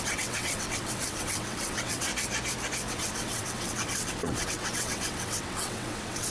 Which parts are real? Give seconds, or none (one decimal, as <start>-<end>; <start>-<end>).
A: 2.1-2.9